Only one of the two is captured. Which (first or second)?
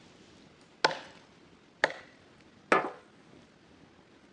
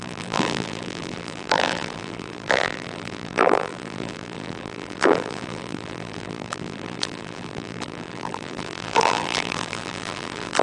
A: first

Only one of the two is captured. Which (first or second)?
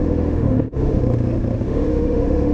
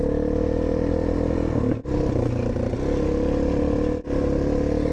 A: second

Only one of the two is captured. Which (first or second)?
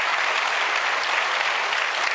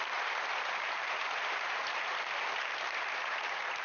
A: first